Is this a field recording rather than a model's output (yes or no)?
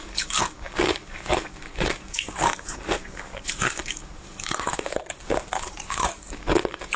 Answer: no